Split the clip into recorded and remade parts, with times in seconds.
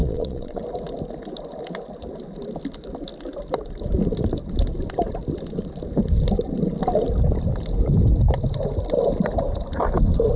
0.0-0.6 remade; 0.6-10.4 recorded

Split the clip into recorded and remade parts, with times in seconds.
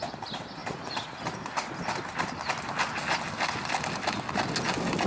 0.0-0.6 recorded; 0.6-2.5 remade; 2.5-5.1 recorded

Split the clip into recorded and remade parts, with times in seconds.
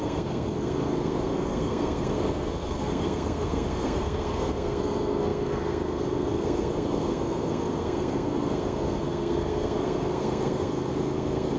0.0-11.6 remade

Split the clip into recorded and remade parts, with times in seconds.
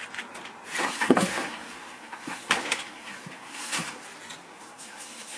0.0-0.8 recorded; 0.8-4.0 remade; 4.0-4.5 recorded; 4.5-5.4 remade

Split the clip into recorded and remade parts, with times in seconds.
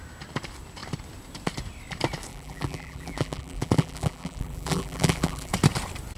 0.0-2.3 recorded; 2.3-5.5 remade; 5.5-6.2 recorded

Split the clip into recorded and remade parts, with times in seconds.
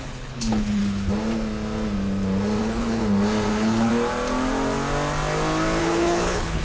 0.0-0.8 remade; 0.8-2.6 recorded; 2.6-3.0 remade; 3.0-3.5 recorded; 3.5-3.9 remade; 3.9-5.8 recorded; 5.8-6.6 remade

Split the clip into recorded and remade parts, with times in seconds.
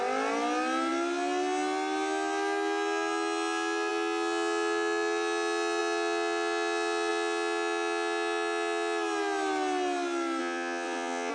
0.0-10.4 recorded; 10.4-11.3 remade